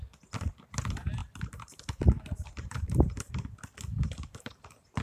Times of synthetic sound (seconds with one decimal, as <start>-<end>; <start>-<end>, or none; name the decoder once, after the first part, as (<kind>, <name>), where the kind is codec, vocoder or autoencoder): 1.2-3.3 (vocoder, BigVGAN v2); 3.9-5.0